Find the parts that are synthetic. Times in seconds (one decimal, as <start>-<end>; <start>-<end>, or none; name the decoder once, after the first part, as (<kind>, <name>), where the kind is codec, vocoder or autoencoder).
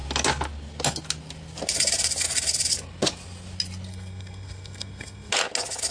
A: 3.9-5.3 (codec, SNAC)